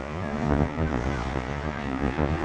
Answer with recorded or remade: remade